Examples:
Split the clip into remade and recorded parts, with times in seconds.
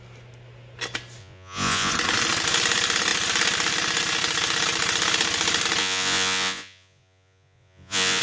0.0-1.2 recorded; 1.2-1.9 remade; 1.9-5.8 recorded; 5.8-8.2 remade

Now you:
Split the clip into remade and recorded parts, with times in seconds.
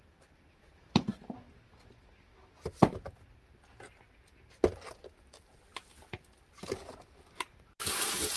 0.0-8.4 recorded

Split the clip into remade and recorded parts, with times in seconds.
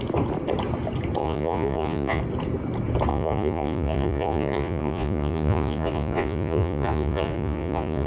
0.0-1.2 recorded; 1.2-2.2 remade; 2.2-3.1 recorded; 3.1-8.1 remade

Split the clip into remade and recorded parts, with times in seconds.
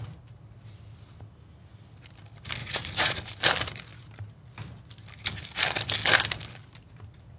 0.0-2.6 recorded; 2.6-3.2 remade; 3.2-7.4 recorded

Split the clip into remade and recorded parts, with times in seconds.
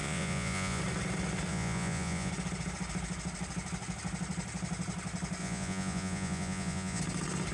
0.0-0.8 remade; 0.8-1.5 recorded; 1.5-2.3 remade; 2.3-5.4 recorded; 5.4-7.0 remade; 7.0-7.5 recorded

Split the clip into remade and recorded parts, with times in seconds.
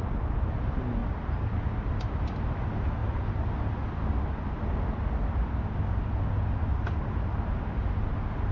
0.0-8.5 recorded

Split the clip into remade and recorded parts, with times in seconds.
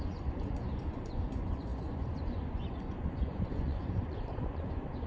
0.0-5.1 remade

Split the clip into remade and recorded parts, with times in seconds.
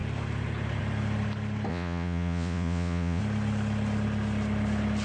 0.0-1.7 recorded; 1.7-3.2 remade; 3.2-5.0 recorded